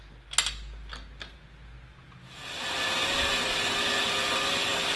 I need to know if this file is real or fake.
real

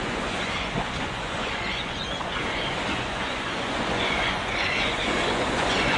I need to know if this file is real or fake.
fake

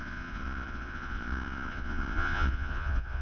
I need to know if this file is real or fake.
fake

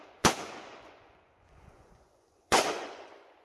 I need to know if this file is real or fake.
fake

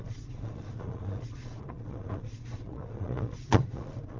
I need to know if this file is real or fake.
fake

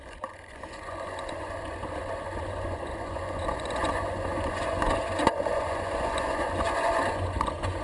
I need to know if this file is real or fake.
fake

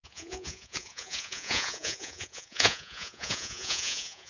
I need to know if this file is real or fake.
fake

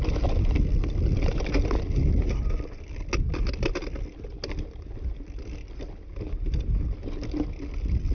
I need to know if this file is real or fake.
real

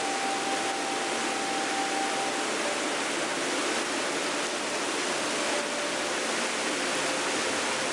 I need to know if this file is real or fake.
real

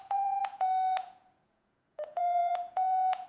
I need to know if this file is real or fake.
fake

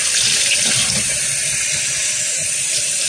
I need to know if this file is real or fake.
real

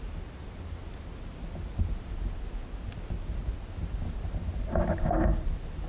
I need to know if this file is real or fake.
real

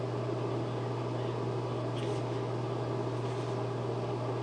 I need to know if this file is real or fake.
real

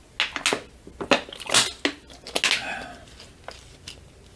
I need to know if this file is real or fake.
real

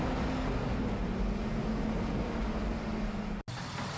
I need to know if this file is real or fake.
real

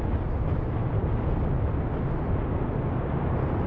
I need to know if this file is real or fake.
real